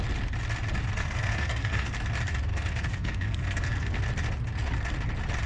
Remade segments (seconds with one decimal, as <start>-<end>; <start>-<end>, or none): 1.0-1.9; 2.5-4.0